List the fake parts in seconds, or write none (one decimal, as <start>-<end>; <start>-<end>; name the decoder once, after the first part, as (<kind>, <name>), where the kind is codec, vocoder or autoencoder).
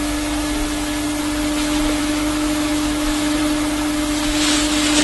2.0-3.4 (autoencoder, DAC-VAE)